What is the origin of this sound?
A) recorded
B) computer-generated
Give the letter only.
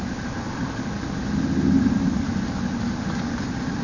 A